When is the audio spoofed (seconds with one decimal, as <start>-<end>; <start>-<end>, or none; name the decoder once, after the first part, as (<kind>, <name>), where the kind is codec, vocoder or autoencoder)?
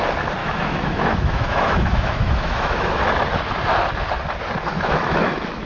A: 0.4-3.0 (autoencoder, DAC-VAE); 4.7-5.7